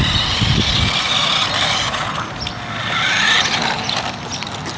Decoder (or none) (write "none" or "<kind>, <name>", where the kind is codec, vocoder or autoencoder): none